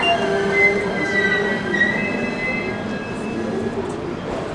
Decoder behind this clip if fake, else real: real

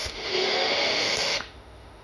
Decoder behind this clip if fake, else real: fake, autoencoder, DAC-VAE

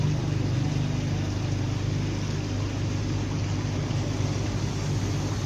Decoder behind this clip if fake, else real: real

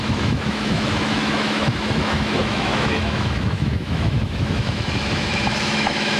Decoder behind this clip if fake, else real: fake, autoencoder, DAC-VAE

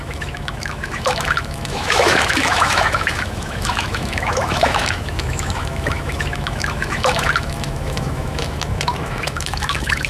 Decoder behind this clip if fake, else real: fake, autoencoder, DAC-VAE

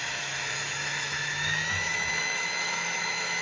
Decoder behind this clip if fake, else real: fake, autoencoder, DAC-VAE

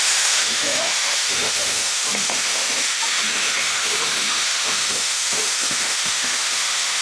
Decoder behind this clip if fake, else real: fake, autoencoder, DAC-VAE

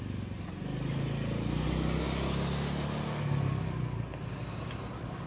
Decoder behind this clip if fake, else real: real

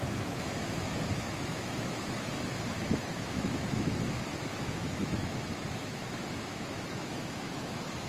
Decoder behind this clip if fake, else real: fake, autoencoder, DAC-VAE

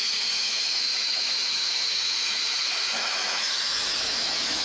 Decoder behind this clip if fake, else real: fake, autoencoder, DAC-VAE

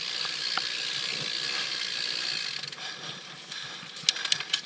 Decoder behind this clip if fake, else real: real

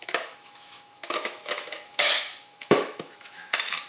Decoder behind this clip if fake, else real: fake, autoencoder, DAC-VAE